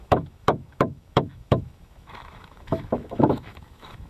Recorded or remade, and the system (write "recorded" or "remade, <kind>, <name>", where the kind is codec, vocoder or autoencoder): remade, autoencoder, DAC-VAE